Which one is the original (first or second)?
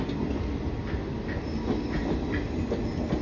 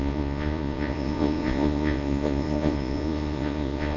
first